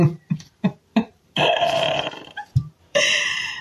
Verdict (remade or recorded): remade